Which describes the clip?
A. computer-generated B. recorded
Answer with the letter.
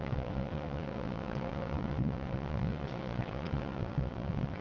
A